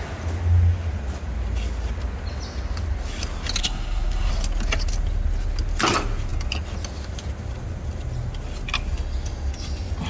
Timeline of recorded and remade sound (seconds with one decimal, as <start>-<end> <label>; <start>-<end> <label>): 0.0-3.6 recorded; 3.6-4.3 remade; 4.3-10.1 recorded